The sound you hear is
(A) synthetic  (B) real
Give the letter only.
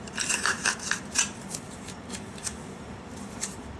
A